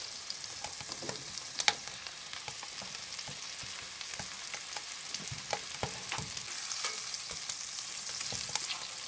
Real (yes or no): yes